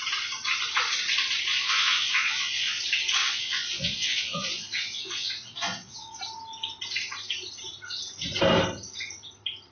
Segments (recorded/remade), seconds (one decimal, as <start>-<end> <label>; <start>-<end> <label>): 0.0-1.5 recorded; 1.5-2.8 remade; 2.8-3.2 recorded; 3.2-6.2 remade; 6.2-9.7 recorded